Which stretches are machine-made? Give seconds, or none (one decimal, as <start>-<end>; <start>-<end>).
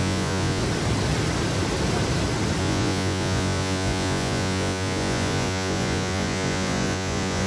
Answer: 0.0-0.6; 2.6-7.5